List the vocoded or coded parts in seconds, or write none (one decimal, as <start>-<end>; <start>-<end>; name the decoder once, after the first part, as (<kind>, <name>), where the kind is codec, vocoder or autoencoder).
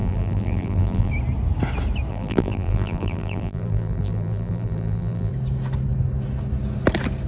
0.0-1.1 (vocoder, BigVGAN v2); 2.1-5.3